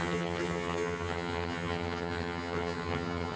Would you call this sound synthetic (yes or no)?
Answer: yes